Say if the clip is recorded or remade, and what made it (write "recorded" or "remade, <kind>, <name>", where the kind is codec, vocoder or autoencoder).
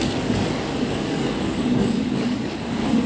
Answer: remade, codec, DAC